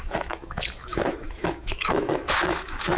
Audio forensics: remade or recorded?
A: remade